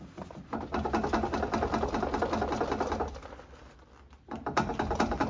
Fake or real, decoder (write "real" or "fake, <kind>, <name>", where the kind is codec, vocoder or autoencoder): real